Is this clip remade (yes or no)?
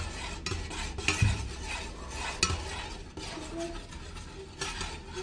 no